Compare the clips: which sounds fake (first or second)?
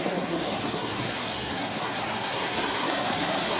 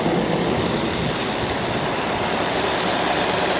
first